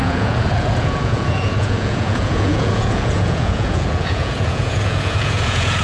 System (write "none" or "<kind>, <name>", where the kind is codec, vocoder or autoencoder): vocoder, Vocos